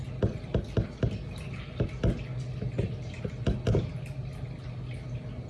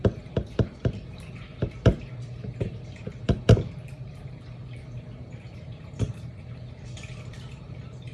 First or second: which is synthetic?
second